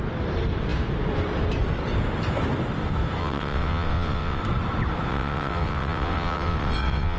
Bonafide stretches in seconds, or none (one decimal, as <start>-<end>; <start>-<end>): 0.0-3.2; 4.4-5.1

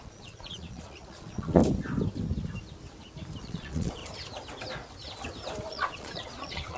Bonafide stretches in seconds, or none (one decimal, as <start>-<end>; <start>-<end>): 1.6-3.4; 4.0-5.7